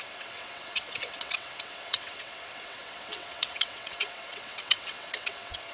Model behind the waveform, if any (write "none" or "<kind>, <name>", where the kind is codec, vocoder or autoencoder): vocoder, WaveNeXt